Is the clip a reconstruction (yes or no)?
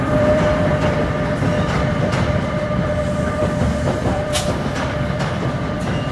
yes